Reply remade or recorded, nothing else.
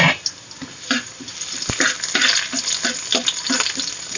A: recorded